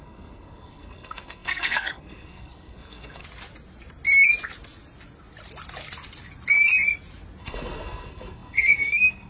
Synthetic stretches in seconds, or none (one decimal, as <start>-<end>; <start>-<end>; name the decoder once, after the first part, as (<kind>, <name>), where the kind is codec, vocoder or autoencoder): 0.0-3.2 (codec, SNAC); 7.4-9.3